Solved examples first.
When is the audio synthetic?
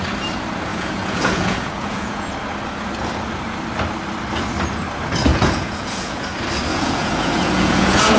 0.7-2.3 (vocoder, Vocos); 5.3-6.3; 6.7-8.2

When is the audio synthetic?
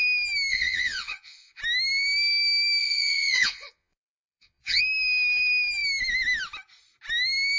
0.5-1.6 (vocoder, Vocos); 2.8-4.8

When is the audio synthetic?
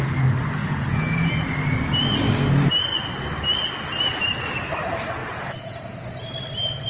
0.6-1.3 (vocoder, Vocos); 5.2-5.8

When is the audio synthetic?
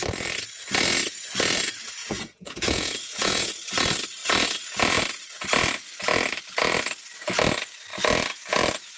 2.0-3.5 (vocoder, Vocos)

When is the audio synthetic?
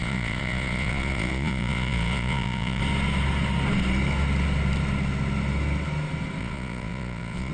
0.0-2.8 (vocoder, Vocos); 6.4-7.5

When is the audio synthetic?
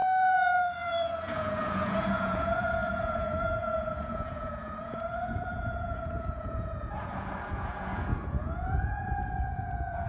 0.0-10.1 (vocoder, Vocos)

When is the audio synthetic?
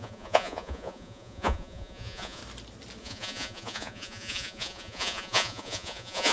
0.0-2.4 (vocoder, Vocos); 3.0-6.3